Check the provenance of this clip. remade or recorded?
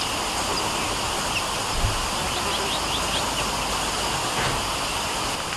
recorded